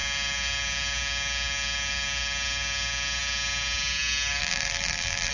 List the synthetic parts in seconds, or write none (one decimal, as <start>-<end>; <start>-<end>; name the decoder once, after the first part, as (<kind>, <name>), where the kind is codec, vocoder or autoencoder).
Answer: 4.4-5.3 (vocoder, BigVGAN v2)